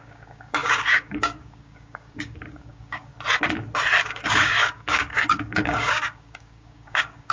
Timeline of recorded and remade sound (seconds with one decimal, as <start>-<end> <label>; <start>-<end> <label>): 0.0-3.1 remade; 3.1-4.0 recorded; 4.0-7.3 remade